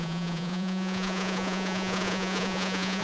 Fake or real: fake